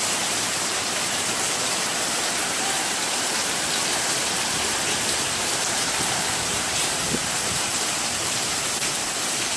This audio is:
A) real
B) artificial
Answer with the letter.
B